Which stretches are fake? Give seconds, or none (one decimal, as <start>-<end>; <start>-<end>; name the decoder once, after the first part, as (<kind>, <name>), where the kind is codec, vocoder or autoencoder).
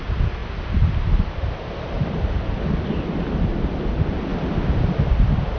0.4-3.8 (vocoder, BigVGAN v2); 4.3-5.1